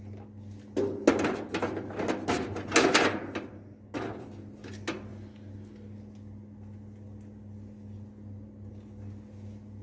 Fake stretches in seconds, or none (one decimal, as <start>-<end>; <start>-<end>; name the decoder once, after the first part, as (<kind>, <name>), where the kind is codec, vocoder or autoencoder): none